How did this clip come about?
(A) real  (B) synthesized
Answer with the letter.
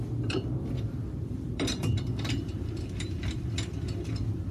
B